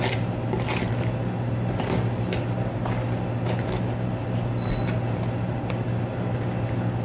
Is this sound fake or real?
real